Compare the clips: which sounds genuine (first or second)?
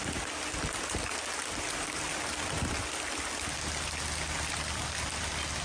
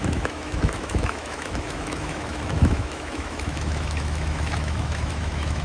first